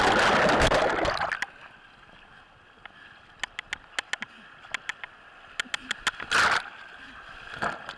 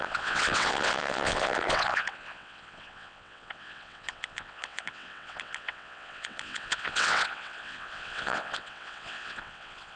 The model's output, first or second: second